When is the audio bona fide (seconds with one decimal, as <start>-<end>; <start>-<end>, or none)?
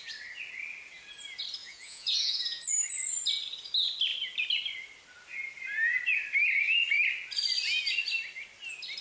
0.0-1.6; 2.6-9.0